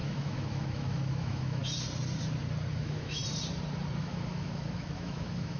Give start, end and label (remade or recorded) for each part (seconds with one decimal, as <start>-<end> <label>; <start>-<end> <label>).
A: 0.0-1.6 remade; 1.6-2.7 recorded; 2.7-3.2 remade; 3.2-4.0 recorded; 4.0-5.6 remade